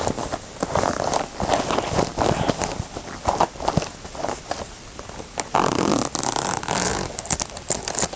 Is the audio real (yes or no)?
yes